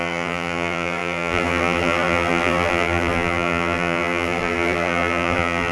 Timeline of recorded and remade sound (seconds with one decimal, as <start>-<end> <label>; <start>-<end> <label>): 0.0-5.7 remade